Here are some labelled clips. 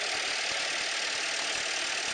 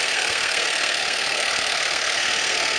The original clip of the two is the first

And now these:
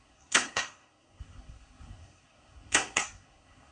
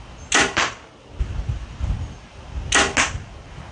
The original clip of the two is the second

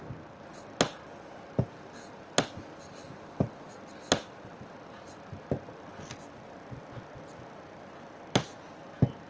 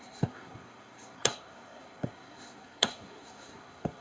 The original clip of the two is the first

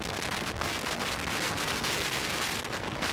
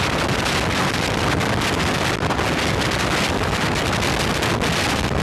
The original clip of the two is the second